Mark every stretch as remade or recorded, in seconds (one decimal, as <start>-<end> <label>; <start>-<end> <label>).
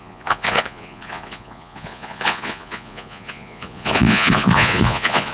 0.0-5.3 remade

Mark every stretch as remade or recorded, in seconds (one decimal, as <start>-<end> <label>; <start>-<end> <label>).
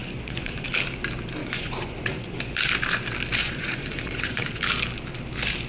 0.0-0.7 remade; 0.7-1.4 recorded; 1.4-2.3 remade; 2.3-3.4 recorded; 3.4-4.6 remade; 4.6-5.7 recorded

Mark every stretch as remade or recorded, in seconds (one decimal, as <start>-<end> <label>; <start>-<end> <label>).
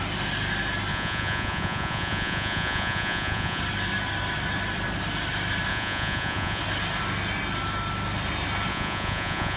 0.0-0.9 recorded; 0.9-3.6 remade; 3.6-5.7 recorded; 5.7-6.6 remade; 6.6-8.7 recorded; 8.7-9.6 remade